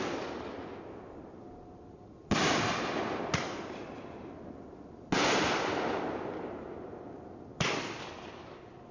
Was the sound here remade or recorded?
recorded